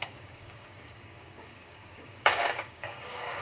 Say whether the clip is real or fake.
fake